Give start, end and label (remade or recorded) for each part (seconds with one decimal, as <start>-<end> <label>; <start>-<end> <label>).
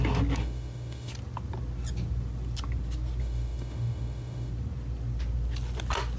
0.0-0.4 recorded; 0.4-1.1 remade; 1.1-3.2 recorded; 3.2-4.5 remade; 4.5-6.2 recorded